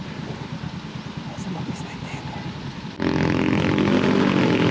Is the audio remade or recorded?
recorded